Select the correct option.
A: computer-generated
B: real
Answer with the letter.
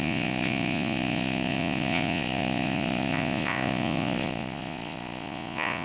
A